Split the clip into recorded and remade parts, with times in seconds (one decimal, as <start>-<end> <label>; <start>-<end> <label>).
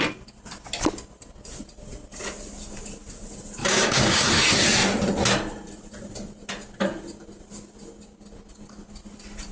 0.0-3.6 recorded; 3.6-4.3 remade; 4.3-9.5 recorded